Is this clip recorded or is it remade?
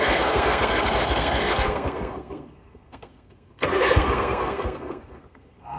remade